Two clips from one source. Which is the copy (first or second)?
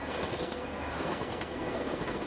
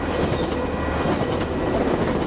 first